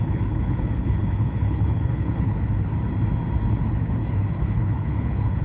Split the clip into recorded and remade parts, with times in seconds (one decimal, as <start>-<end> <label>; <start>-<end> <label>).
0.0-2.7 remade; 2.7-3.5 recorded; 3.5-5.4 remade